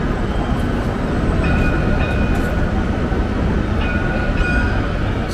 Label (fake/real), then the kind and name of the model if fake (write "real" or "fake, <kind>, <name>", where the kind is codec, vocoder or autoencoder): real